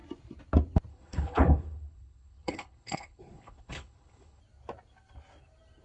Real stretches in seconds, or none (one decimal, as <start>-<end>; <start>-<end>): 0.0-0.9; 4.4-5.8